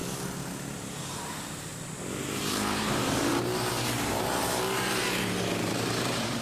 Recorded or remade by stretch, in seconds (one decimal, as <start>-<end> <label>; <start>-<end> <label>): 0.0-1.0 recorded; 1.0-6.4 remade